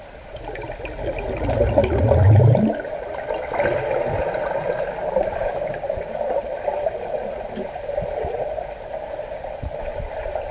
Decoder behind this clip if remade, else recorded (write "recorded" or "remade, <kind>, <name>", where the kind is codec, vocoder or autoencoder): recorded